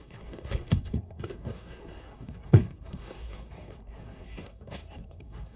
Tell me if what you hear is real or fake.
fake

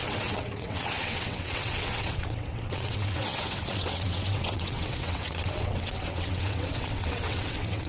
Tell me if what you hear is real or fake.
fake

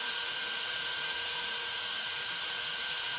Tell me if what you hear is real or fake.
fake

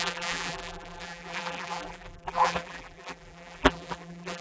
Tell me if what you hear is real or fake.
fake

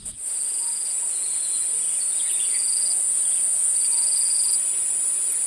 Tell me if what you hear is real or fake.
fake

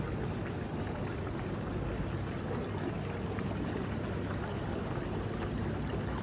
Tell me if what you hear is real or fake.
real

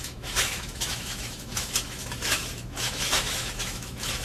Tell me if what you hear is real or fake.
fake